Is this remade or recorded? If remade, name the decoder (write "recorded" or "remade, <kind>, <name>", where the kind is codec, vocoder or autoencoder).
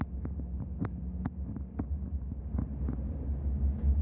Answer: recorded